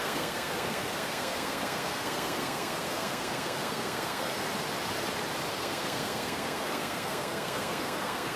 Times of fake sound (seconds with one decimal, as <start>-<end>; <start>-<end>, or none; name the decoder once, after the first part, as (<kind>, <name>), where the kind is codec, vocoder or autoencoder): 0.0-4.5 (codec, SNAC); 5.5-8.4